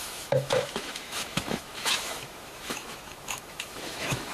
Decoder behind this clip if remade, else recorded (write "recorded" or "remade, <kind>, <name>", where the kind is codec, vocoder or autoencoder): remade, autoencoder, DAC-VAE